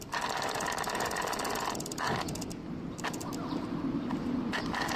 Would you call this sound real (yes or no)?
yes